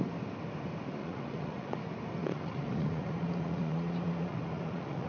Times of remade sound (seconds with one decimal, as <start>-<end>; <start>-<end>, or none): 1.0-1.8; 2.2-5.1